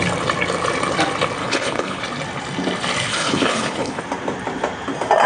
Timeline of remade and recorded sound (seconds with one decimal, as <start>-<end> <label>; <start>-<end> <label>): 0.0-1.4 recorded; 1.4-2.0 remade; 2.0-3.1 recorded; 3.1-4.0 remade; 4.0-5.3 recorded